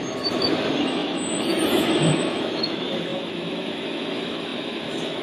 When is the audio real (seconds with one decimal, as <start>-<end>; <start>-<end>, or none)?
none